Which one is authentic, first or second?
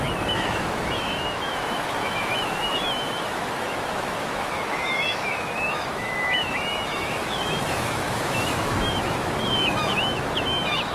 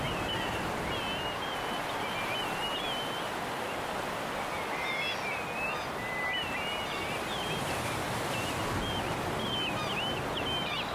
second